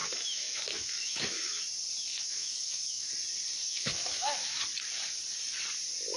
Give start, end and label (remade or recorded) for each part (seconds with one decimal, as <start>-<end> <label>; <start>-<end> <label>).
0.0-1.6 remade; 1.6-2.1 recorded; 2.1-3.1 remade; 3.1-3.6 recorded; 3.6-4.6 remade; 4.6-6.2 recorded